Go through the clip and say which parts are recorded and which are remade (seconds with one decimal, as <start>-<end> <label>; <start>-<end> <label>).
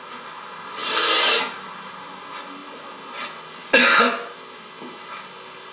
0.0-5.7 recorded